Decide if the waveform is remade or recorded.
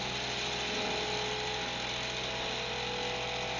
recorded